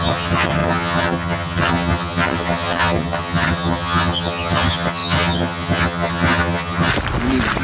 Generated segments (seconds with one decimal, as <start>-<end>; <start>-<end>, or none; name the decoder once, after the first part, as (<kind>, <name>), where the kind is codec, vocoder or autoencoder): 0.0-6.9 (vocoder, HiFi-GAN)

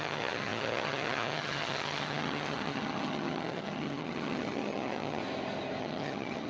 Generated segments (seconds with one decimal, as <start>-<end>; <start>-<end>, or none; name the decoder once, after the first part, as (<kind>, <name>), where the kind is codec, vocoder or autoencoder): 0.0-5.2 (vocoder, HiFi-GAN); 5.8-6.5

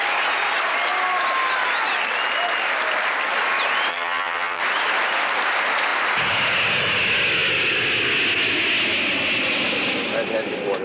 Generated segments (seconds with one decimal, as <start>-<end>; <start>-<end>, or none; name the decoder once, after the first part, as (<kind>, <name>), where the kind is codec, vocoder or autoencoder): 3.9-4.6 (vocoder, HiFi-GAN)

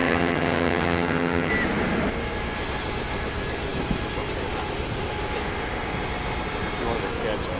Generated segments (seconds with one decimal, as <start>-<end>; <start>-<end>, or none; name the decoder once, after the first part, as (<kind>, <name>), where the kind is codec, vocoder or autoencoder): 0.0-1.5 (vocoder, HiFi-GAN)